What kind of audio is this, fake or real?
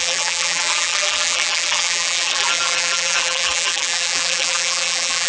fake